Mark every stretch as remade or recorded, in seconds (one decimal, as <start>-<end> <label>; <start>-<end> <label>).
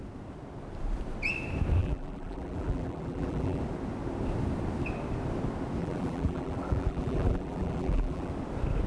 0.0-1.8 recorded; 1.8-3.6 remade; 3.6-5.8 recorded; 5.8-8.3 remade; 8.3-8.9 recorded